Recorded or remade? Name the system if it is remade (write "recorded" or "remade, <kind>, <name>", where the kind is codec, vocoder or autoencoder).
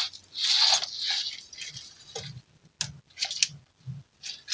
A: recorded